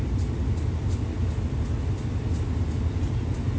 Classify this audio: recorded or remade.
recorded